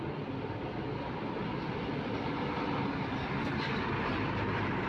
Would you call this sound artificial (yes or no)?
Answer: no